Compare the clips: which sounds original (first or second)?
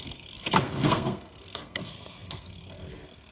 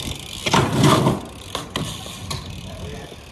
second